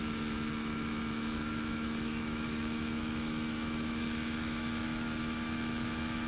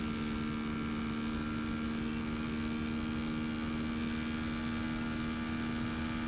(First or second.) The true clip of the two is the second